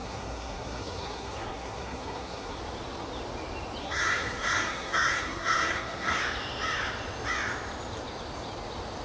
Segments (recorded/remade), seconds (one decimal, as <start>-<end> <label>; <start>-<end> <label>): 0.0-2.6 remade; 2.6-3.8 recorded; 3.8-6.2 remade; 6.2-9.0 recorded